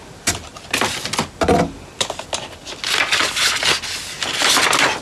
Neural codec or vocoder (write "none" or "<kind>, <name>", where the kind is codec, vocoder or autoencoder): none